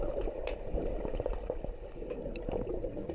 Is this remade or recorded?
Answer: recorded